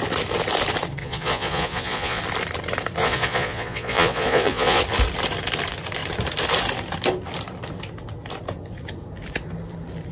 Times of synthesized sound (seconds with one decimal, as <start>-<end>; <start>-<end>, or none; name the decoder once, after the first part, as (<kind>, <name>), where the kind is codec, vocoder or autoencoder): 1.0-2.2 (vocoder, Vocos); 3.0-4.8